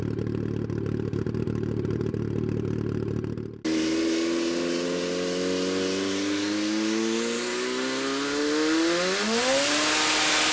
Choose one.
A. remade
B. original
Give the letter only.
B